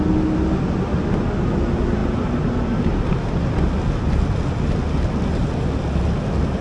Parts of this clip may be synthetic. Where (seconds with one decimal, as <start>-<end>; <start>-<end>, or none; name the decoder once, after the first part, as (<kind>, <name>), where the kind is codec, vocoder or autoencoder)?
none